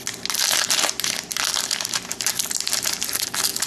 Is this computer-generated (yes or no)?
no